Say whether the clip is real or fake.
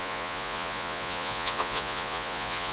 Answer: fake